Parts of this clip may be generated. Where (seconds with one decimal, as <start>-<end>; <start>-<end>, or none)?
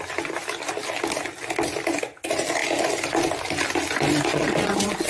4.3-5.1